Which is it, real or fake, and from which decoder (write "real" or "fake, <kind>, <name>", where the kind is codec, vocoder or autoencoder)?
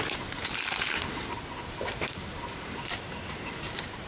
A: fake, vocoder, BigVGAN v2